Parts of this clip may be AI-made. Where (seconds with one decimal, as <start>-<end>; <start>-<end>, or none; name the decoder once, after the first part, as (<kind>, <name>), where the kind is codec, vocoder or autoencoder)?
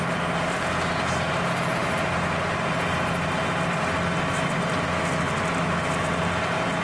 none